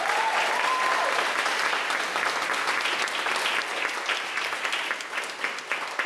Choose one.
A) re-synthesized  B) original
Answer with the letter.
B